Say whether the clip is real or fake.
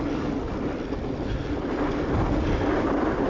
real